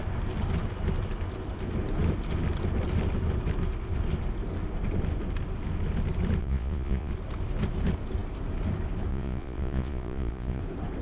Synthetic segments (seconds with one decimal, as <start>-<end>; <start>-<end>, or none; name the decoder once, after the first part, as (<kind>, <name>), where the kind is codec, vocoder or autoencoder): 6.4-7.1 (vocoder, Vocos); 9.1-10.6